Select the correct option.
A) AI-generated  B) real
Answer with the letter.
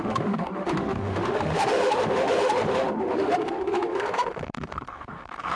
A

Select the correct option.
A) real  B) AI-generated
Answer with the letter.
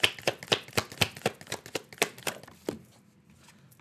A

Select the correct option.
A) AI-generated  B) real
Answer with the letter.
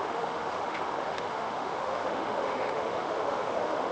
A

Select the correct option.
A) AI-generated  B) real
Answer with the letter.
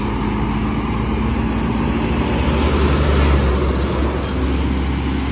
B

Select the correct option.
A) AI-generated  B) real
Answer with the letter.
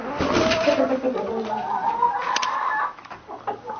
B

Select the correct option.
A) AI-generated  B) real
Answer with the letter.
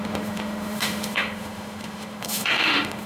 A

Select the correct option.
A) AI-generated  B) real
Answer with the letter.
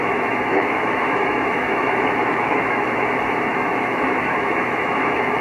A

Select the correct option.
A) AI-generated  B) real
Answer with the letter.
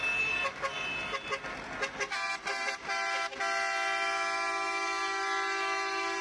B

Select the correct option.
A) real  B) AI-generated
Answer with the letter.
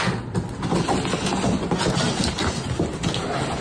A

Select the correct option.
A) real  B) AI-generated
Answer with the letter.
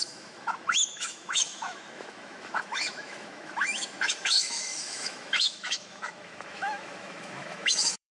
B